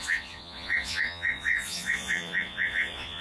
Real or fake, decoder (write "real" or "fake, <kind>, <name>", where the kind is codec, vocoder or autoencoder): fake, vocoder, Vocos